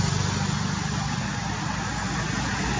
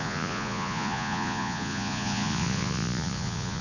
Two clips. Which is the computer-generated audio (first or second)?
second